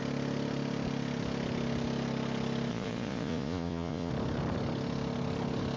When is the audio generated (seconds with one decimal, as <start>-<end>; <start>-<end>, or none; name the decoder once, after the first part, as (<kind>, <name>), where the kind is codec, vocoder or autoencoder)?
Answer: 2.7-4.1 (vocoder, Vocos)